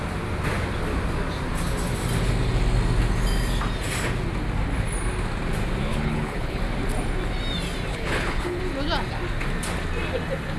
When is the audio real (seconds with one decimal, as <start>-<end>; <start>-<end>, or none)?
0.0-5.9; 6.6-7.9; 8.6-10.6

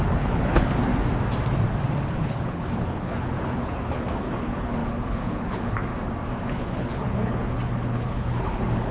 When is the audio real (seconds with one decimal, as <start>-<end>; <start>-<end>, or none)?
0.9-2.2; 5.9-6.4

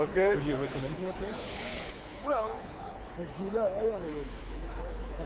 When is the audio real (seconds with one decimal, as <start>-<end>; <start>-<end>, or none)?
none

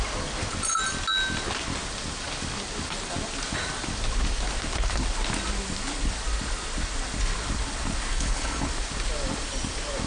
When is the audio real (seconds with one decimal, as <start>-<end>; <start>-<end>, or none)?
0.0-8.1; 8.7-10.1